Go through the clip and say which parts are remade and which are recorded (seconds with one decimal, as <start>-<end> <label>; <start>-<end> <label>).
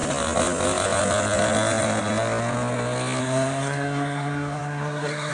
0.0-3.2 recorded; 3.2-5.3 remade